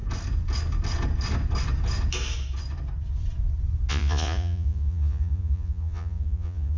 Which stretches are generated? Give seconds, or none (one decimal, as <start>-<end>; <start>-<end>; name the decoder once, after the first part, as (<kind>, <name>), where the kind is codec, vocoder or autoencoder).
3.9-6.8 (vocoder, Vocos)